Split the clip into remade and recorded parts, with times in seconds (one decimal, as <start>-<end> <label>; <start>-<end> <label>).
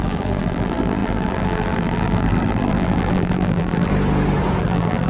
0.0-3.9 remade; 3.9-4.6 recorded; 4.6-5.1 remade